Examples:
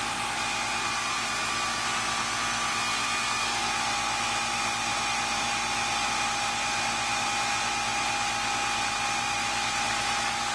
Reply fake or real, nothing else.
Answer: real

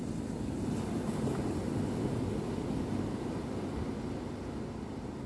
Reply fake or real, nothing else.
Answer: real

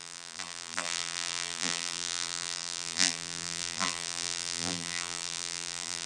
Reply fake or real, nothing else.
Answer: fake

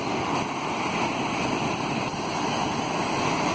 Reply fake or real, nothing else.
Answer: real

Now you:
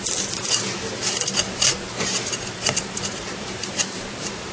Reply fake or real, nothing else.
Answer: fake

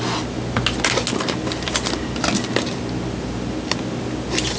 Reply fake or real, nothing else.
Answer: real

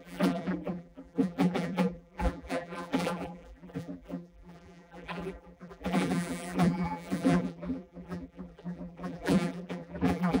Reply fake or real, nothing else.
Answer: fake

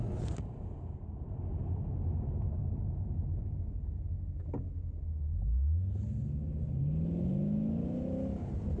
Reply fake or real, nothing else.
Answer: real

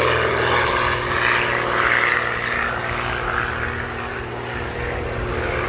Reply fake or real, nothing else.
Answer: real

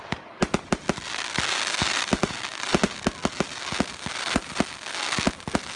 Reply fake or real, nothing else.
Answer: real